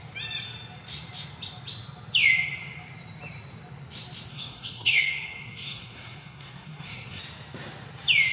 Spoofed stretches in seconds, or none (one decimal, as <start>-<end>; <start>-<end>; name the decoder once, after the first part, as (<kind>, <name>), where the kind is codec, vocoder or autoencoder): 4.3-7.2 (codec, SNAC)